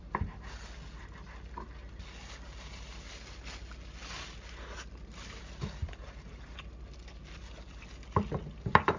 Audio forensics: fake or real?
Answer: real